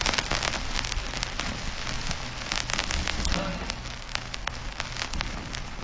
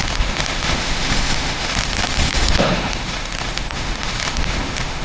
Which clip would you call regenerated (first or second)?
second